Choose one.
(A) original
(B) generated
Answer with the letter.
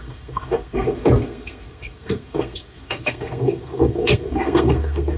B